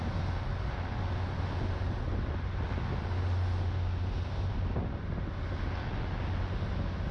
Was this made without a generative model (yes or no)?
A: yes